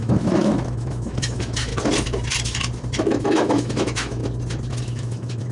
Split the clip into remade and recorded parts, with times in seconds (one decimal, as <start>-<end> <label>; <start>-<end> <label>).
0.0-1.7 remade; 1.7-3.0 recorded; 3.0-4.2 remade; 4.2-4.8 recorded; 4.8-5.5 remade